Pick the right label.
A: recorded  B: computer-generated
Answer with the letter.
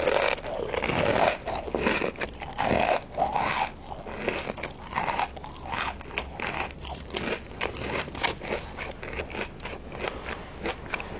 A